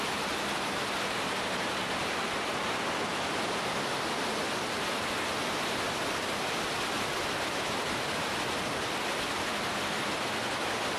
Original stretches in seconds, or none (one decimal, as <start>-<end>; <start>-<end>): 0.0-11.0